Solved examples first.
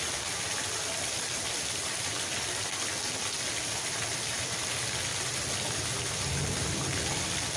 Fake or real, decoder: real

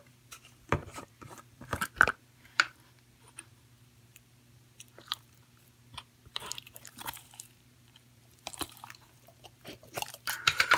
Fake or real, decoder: fake, vocoder, BigVGAN v2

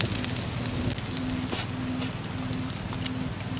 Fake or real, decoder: real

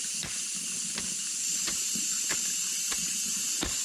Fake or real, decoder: fake, vocoder, BigVGAN v2